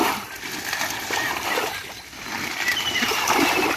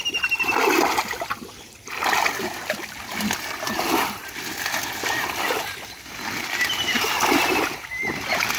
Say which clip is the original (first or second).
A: second